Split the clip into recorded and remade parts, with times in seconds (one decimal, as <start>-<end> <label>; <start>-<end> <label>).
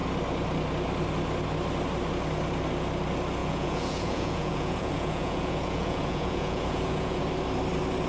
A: 0.0-3.4 recorded; 3.4-7.2 remade; 7.2-8.1 recorded